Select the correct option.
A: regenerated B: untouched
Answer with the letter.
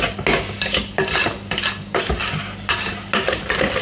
B